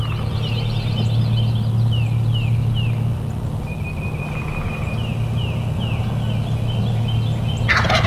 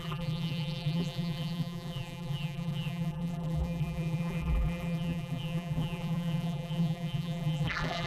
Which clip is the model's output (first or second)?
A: second